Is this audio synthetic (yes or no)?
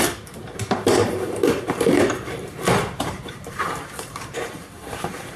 yes